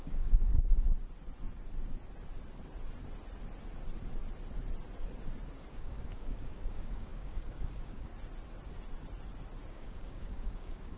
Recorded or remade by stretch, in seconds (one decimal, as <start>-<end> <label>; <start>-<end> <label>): 0.0-0.5 remade; 0.5-5.7 recorded; 5.7-8.1 remade; 8.1-9.7 recorded; 9.7-11.0 remade